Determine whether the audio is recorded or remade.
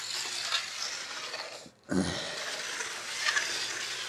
recorded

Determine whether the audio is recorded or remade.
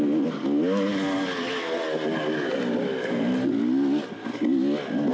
recorded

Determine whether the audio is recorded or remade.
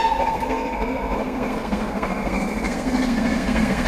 remade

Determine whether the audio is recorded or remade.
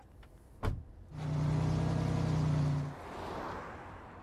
recorded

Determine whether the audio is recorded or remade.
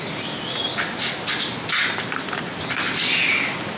recorded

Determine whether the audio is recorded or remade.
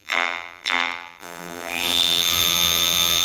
remade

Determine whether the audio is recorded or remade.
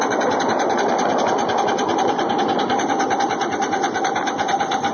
recorded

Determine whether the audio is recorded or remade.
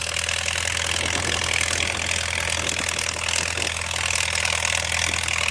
recorded